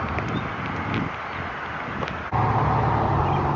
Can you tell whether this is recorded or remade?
recorded